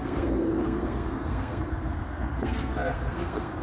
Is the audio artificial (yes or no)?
yes